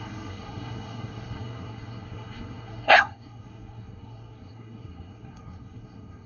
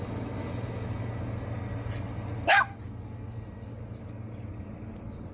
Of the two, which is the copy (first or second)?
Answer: first